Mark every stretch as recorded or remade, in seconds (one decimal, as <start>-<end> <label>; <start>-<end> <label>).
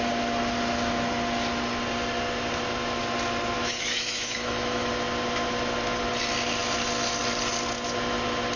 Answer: 0.0-3.6 recorded; 3.6-4.9 remade; 4.9-8.6 recorded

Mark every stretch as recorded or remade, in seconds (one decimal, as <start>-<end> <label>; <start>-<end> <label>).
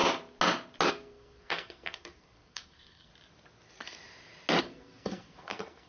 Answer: 0.0-0.9 recorded; 0.9-3.1 remade; 3.1-4.6 recorded; 4.6-5.9 remade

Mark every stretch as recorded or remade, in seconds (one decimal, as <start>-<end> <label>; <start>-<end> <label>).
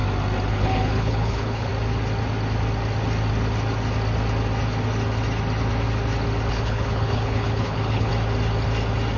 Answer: 0.0-0.5 recorded; 0.5-1.7 remade; 1.7-6.5 recorded; 6.5-8.1 remade; 8.1-9.2 recorded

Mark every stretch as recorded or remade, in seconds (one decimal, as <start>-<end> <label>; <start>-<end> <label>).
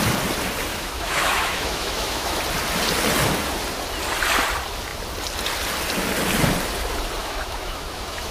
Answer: 0.0-0.7 recorded; 0.7-2.4 remade; 2.4-7.2 recorded; 7.2-8.3 remade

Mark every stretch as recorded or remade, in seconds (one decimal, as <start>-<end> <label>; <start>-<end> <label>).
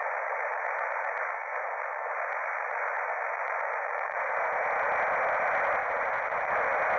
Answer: 0.0-4.2 remade; 4.2-5.8 recorded; 5.8-6.5 remade; 6.5-7.0 recorded